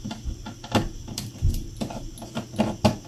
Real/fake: real